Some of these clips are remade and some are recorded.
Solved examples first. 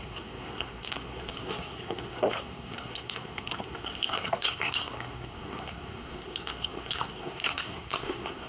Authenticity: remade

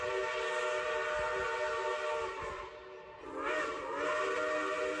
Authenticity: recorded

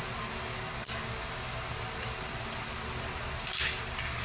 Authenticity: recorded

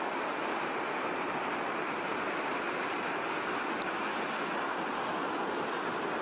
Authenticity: recorded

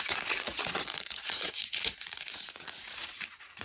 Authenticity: remade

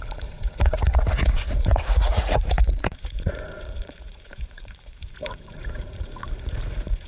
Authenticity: remade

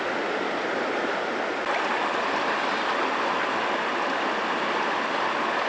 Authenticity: recorded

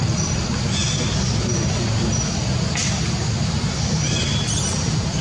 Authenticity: recorded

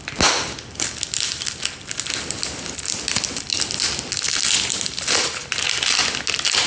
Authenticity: recorded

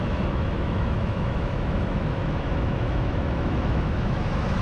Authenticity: remade